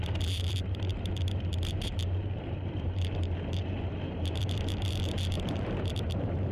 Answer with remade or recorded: remade